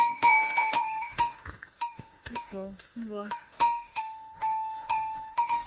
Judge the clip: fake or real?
fake